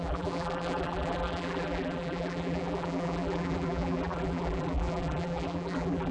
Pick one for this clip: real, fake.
fake